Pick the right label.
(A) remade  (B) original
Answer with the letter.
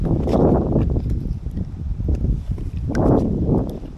B